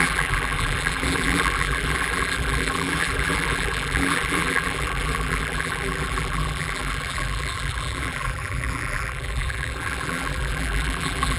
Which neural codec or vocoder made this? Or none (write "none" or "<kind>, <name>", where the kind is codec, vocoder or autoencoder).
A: vocoder, BigVGAN v2